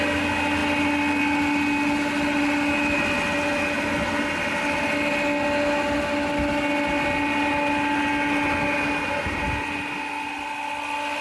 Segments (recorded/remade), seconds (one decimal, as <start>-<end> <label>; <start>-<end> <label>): 0.0-11.2 recorded